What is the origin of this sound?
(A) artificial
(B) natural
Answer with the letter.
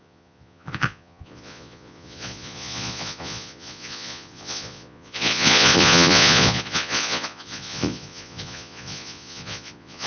A